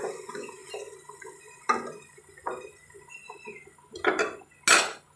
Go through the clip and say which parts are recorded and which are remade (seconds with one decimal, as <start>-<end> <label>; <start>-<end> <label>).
0.0-5.2 recorded

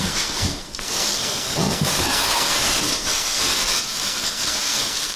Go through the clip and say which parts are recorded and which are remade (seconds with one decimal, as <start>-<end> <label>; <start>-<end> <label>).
0.0-5.2 remade